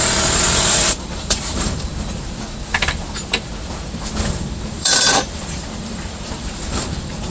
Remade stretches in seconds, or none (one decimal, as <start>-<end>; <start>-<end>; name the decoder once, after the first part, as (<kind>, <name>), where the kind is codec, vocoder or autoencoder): 0.0-1.9 (vocoder, BigVGAN v2); 4.3-7.3